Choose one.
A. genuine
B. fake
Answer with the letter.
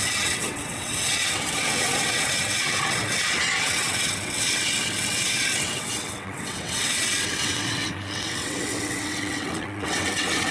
B